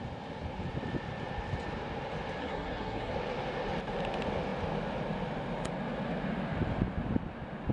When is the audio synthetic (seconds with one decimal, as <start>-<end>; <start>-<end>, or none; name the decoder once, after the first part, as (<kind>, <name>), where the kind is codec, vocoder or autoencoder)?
2.4-3.1 (codec, SNAC)